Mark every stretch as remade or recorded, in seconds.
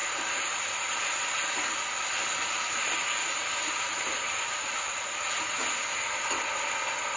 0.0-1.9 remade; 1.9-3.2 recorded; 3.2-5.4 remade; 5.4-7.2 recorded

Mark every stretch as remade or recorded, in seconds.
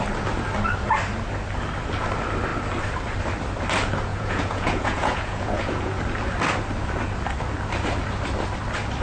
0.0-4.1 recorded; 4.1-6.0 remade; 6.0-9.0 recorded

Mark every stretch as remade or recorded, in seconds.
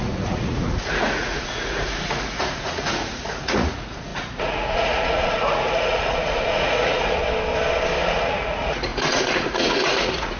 0.0-7.2 remade; 7.2-8.0 recorded; 8.0-10.4 remade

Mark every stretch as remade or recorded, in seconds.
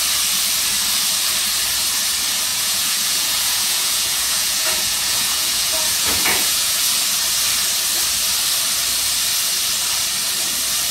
0.0-2.5 recorded; 2.5-6.8 remade; 6.8-10.9 recorded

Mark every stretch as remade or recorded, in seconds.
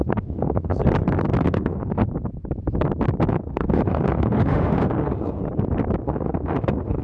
0.0-0.8 remade; 0.8-1.4 recorded; 1.4-2.0 remade; 2.0-3.3 recorded; 3.3-5.4 remade; 5.4-6.0 recorded; 6.0-7.0 remade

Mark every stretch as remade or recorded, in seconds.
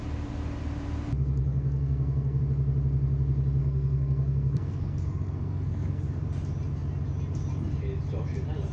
0.0-1.4 recorded; 1.4-2.4 remade; 2.4-3.6 recorded; 3.6-6.0 remade; 6.0-8.7 recorded